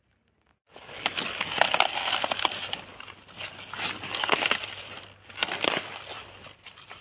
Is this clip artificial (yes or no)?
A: no